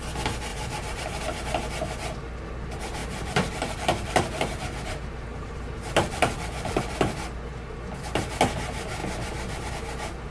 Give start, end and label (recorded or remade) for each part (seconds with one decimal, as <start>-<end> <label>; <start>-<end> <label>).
0.0-0.5 recorded; 0.5-1.2 remade; 1.2-3.0 recorded; 3.0-6.8 remade; 6.8-10.3 recorded